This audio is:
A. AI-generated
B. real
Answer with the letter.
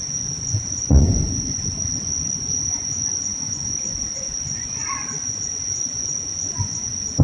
A